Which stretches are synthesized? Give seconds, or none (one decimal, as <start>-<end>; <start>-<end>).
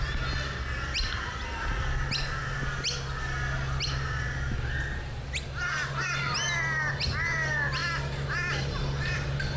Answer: none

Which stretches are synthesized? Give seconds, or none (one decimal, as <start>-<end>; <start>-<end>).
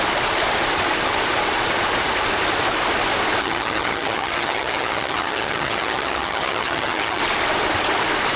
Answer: 3.4-7.2